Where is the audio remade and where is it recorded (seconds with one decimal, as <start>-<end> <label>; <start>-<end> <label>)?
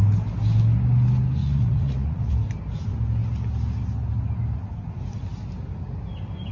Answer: 0.0-1.4 recorded; 1.4-2.3 remade; 2.3-6.5 recorded